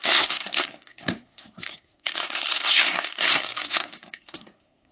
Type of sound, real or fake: fake